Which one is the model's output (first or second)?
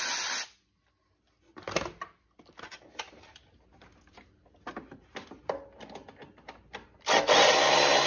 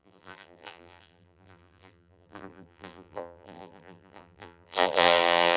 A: second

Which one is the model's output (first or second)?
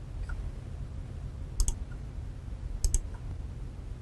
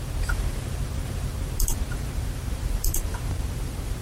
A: second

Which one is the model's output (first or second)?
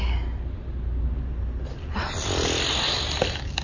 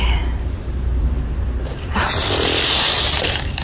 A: second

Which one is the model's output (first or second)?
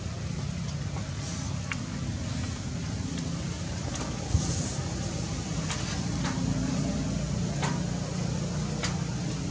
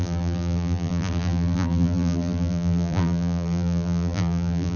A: second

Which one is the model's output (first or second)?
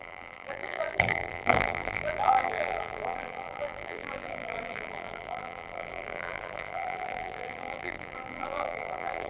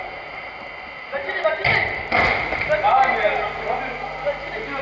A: first